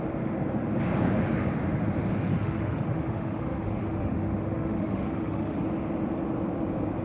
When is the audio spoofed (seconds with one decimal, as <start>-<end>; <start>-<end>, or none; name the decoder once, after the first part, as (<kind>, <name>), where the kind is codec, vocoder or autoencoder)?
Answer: 2.3-5.6 (autoencoder, DAC-VAE)